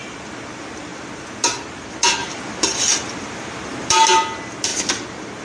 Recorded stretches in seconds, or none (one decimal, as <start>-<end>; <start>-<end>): 0.0-5.4